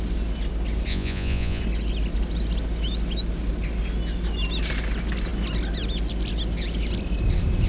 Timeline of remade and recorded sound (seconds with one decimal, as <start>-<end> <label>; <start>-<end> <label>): 0.0-0.9 recorded; 0.9-1.6 remade; 1.6-7.7 recorded